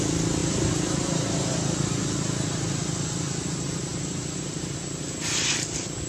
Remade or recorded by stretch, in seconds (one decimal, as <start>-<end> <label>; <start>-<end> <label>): 0.0-0.4 recorded; 0.4-1.5 remade; 1.5-3.9 recorded; 3.9-5.0 remade; 5.0-6.1 recorded